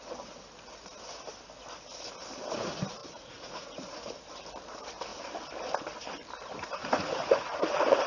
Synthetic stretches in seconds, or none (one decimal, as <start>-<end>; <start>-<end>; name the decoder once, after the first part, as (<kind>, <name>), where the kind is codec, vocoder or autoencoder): 3.0-4.1 (vocoder, Vocos); 6.8-8.1